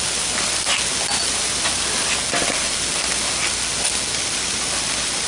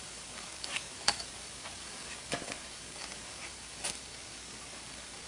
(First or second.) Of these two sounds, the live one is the first